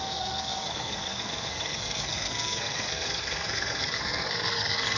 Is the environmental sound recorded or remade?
remade